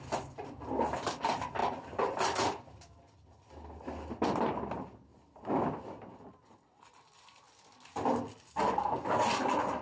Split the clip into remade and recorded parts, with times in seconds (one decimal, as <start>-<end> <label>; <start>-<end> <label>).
0.0-1.6 recorded; 1.6-2.2 remade; 2.2-5.1 recorded; 5.1-5.6 remade; 5.6-9.8 recorded